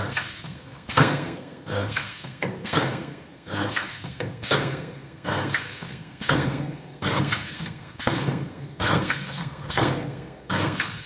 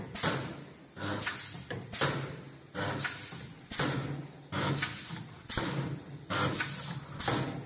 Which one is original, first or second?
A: second